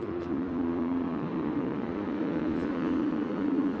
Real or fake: fake